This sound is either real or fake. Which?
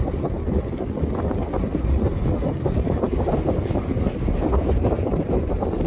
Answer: real